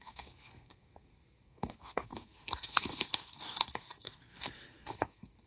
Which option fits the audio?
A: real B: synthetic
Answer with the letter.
B